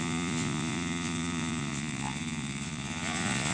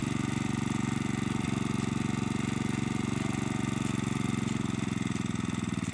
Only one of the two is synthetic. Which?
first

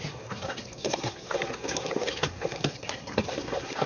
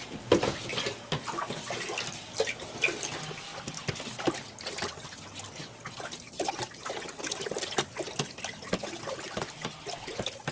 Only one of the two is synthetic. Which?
first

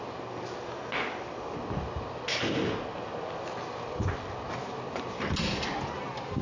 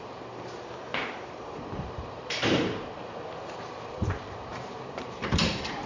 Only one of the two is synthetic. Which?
second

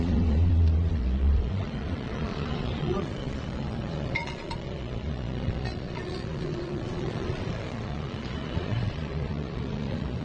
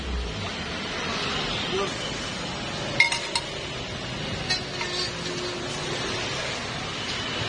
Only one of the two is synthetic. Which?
first